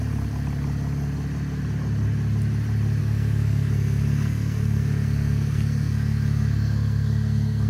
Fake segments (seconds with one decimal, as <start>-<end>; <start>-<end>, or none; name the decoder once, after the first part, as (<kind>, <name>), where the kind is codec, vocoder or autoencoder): 3.0-7.7 (codec, SNAC)